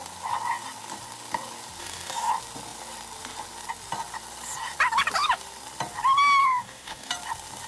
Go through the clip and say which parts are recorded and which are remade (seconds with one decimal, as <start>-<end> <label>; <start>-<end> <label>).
0.0-1.8 recorded; 1.8-2.3 remade; 2.3-6.4 recorded; 6.4-7.1 remade; 7.1-7.7 recorded